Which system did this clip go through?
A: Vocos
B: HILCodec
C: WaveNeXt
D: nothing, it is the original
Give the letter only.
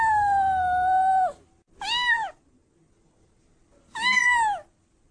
D